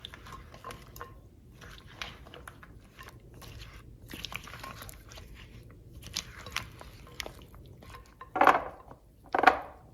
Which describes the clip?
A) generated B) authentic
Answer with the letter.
A